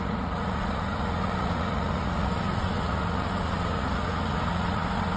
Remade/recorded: remade